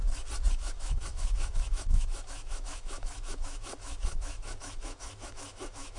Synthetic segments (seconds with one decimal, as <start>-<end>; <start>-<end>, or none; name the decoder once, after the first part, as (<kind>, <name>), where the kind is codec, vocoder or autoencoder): 0.5-6.0 (autoencoder, DAC-VAE)